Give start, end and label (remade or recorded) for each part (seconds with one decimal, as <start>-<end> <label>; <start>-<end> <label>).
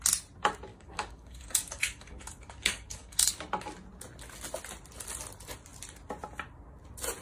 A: 0.0-0.7 recorded; 0.7-3.3 remade; 3.3-7.2 recorded